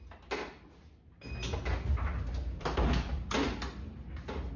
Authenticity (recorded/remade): recorded